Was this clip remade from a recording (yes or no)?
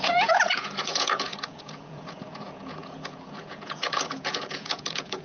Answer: yes